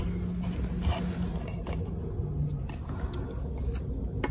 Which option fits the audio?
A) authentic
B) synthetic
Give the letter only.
A